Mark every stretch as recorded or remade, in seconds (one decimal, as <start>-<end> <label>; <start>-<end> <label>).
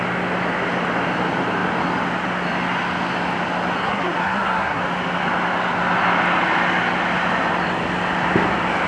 0.0-3.8 recorded; 3.8-4.8 remade; 4.8-8.9 recorded